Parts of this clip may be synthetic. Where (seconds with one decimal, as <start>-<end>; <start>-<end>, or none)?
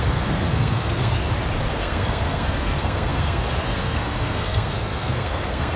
0.0-1.2; 1.7-5.8